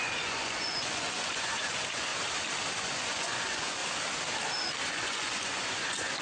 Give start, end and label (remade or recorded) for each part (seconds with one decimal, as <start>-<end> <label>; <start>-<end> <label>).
0.0-2.1 remade; 2.1-2.8 recorded; 2.8-3.8 remade; 3.8-4.8 recorded; 4.8-6.2 remade